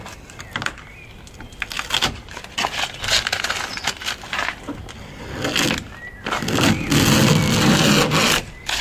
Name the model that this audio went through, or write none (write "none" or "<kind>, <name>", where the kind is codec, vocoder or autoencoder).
none